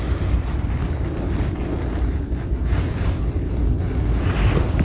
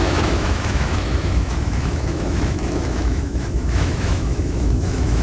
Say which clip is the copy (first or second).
second